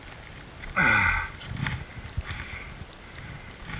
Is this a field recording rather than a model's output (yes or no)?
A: yes